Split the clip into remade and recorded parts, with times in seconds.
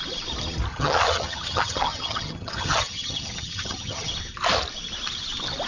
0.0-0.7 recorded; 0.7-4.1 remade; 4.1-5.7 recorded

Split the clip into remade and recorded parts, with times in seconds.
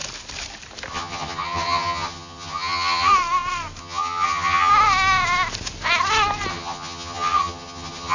0.0-0.9 recorded; 0.9-3.1 remade; 3.1-3.8 recorded; 3.8-4.7 remade; 4.7-6.5 recorded; 6.5-8.1 remade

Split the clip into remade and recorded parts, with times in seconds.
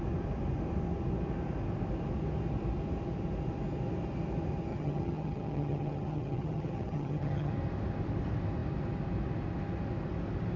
0.0-4.7 recorded; 4.7-7.5 remade; 7.5-10.6 recorded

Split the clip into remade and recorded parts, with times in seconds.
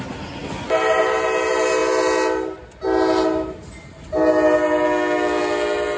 0.0-6.0 recorded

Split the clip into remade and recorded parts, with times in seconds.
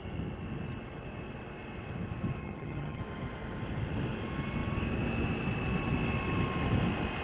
0.0-2.4 recorded; 2.4-3.0 remade; 3.0-7.2 recorded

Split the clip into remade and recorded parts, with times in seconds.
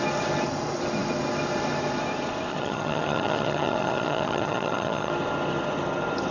0.0-2.5 recorded; 2.5-5.1 remade; 5.1-6.3 recorded